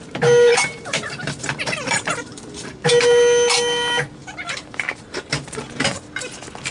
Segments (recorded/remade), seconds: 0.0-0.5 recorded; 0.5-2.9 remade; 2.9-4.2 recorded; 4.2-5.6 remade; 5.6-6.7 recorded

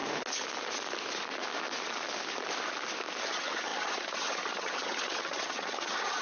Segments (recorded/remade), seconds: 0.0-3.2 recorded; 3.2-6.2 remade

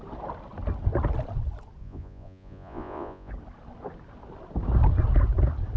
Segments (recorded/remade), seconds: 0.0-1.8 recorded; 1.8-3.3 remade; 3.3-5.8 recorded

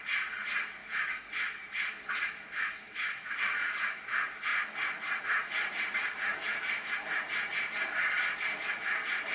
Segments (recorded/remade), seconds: 0.0-0.8 recorded; 0.8-4.0 remade; 4.0-6.3 recorded; 6.3-6.9 remade; 6.9-9.3 recorded

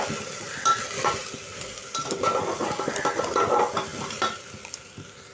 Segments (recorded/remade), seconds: 0.0-5.3 recorded

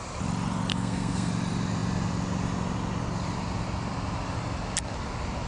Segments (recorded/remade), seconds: 0.0-0.7 recorded; 0.7-1.3 remade; 1.3-5.5 recorded

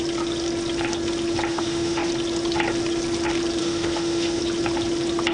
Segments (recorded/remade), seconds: 0.0-1.5 recorded; 1.5-2.1 remade; 2.1-3.6 recorded; 3.6-4.4 remade; 4.4-5.3 recorded

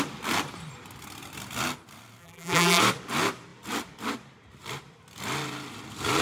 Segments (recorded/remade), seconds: 0.0-2.2 recorded; 2.2-2.8 remade; 2.8-6.2 recorded